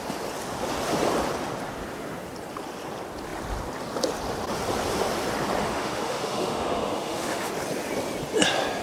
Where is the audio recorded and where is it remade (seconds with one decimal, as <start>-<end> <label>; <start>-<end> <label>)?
0.0-5.6 recorded; 5.6-7.5 remade; 7.5-8.8 recorded